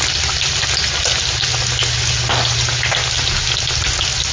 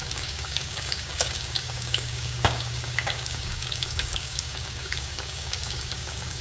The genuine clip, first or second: first